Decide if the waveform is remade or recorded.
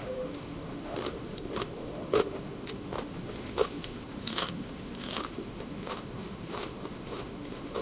remade